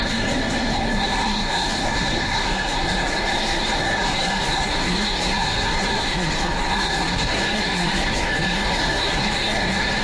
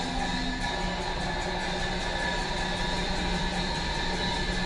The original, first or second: second